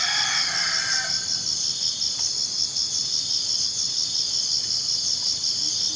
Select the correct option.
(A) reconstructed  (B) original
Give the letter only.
B